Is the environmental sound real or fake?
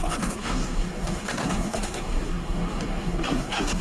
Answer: fake